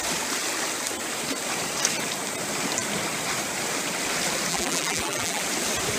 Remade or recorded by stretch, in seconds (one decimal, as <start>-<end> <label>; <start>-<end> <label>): 0.0-4.5 recorded; 4.5-5.4 remade; 5.4-6.0 recorded